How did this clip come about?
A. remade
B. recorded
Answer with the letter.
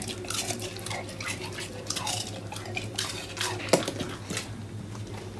B